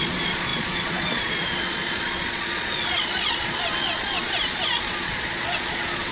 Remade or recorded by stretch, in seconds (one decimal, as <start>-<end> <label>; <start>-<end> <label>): 0.0-6.1 remade